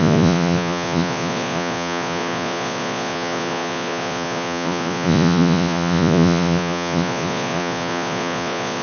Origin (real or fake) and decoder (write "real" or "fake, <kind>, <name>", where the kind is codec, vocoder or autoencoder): fake, vocoder, Vocos